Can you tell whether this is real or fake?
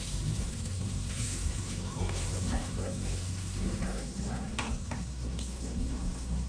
fake